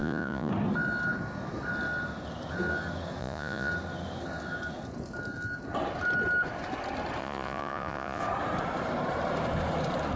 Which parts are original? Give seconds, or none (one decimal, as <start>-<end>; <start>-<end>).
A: 0.5-3.2; 3.7-7.2; 8.2-10.2